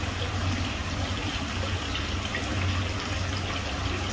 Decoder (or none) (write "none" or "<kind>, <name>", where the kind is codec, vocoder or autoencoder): none